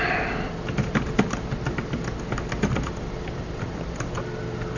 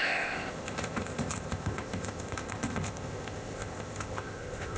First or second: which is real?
first